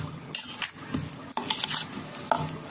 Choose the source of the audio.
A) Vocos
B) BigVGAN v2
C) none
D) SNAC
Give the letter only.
C